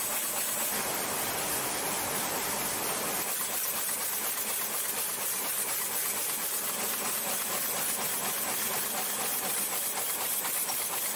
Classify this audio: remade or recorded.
recorded